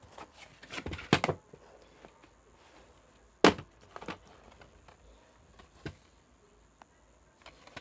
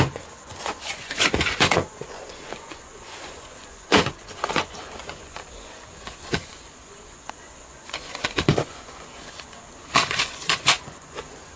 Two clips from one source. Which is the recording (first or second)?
first